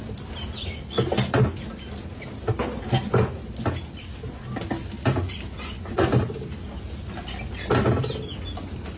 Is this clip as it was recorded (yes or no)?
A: yes